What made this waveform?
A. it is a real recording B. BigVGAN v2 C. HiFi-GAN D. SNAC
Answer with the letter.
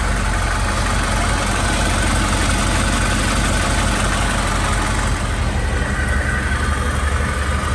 A